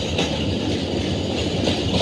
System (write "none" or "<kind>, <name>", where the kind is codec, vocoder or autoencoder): none